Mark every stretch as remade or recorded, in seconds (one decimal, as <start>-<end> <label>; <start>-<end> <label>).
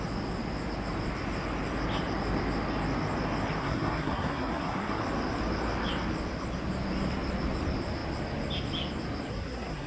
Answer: 0.0-3.6 recorded; 3.6-5.0 remade; 5.0-9.3 recorded; 9.3-9.9 remade